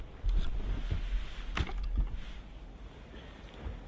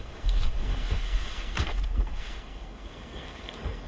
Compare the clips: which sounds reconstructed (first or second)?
second